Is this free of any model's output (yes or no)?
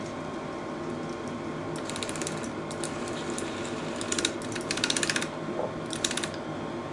yes